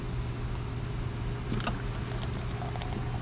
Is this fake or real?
real